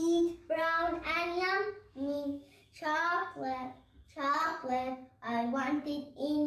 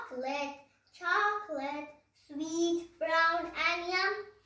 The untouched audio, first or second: second